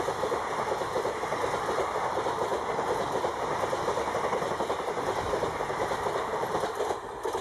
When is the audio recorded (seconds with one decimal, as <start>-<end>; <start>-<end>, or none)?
0.0-7.4